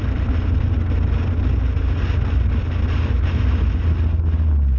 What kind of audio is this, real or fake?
real